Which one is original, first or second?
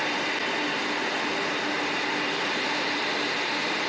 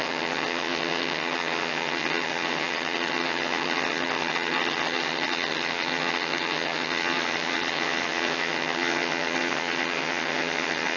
first